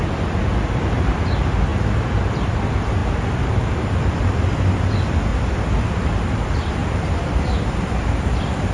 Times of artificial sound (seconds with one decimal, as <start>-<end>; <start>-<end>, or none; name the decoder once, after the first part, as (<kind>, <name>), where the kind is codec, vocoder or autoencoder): 0.0-1.7 (vocoder, BigVGAN v2); 2.2-5.3; 5.8-8.7

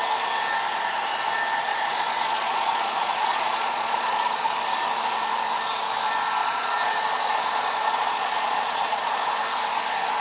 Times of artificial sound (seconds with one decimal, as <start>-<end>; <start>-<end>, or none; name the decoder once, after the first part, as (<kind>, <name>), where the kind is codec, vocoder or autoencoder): 1.7-4.5 (vocoder, Vocos); 6.4-9.3

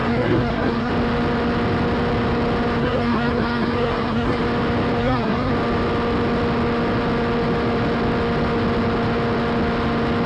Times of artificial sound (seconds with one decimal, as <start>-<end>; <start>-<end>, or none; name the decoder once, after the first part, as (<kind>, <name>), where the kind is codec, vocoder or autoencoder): 0.0-0.9 (codec, SNAC); 2.8-4.4; 5.0-5.5

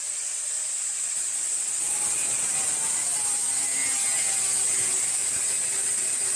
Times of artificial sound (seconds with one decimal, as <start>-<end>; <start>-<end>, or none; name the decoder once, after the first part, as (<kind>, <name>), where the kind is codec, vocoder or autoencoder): 0.0-3.8 (vocoder, BigVGAN v2); 5.0-6.4

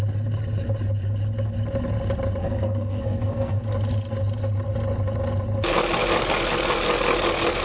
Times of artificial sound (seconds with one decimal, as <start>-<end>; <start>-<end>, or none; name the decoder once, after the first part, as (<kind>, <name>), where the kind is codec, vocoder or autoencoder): 2.4-3.6 (codec, SNAC)